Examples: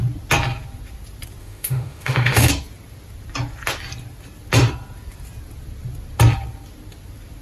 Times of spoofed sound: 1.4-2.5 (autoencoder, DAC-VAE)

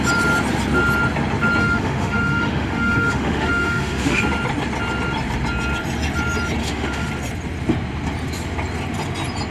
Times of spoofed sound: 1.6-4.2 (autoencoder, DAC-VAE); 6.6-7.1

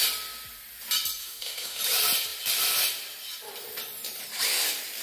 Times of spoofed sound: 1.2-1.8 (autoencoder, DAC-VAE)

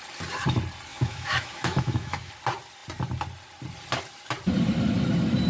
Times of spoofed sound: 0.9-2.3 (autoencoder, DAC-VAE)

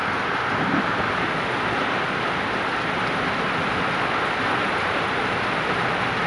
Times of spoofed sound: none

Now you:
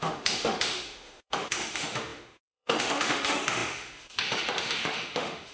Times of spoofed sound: 0.0-5.5 (autoencoder, DAC-VAE)

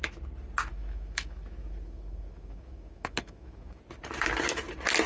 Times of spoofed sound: 0.7-3.8 (autoencoder, DAC-VAE)

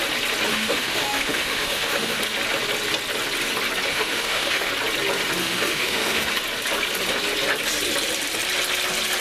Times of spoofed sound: 0.5-2.2 (autoencoder, DAC-VAE); 3.9-4.7; 5.4-6.3